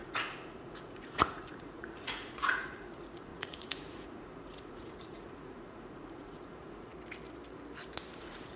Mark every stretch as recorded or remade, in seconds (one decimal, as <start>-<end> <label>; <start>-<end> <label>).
0.0-6.9 remade; 6.9-8.2 recorded; 8.2-8.6 remade